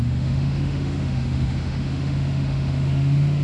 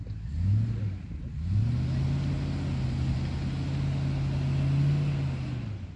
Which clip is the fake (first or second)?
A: first